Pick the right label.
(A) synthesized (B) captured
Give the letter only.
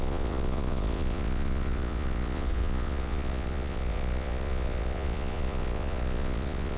A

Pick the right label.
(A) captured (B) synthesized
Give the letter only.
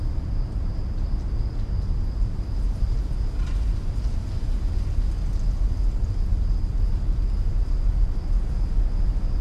A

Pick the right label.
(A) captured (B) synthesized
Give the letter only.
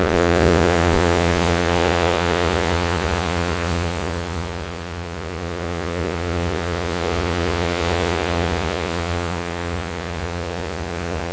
B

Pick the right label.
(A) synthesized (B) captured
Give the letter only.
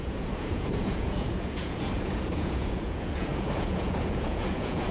A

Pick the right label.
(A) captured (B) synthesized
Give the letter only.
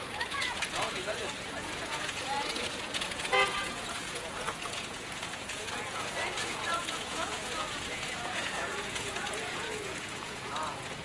B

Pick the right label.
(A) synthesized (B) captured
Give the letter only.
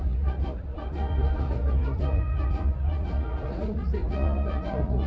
A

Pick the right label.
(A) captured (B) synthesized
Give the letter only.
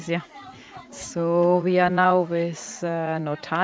B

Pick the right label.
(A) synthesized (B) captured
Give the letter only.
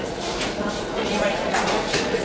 A